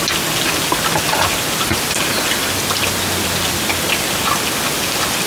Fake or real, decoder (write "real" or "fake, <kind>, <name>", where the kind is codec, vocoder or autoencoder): real